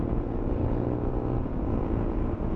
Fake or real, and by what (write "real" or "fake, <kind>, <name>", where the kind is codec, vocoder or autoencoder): fake, vocoder, Vocos